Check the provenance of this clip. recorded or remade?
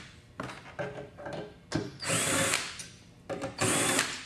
recorded